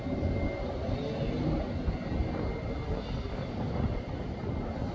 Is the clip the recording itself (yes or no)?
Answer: yes